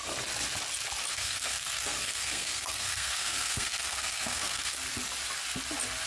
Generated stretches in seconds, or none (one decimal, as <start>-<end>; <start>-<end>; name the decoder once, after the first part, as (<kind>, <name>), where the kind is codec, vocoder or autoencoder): 1.1-4.8 (codec, SNAC)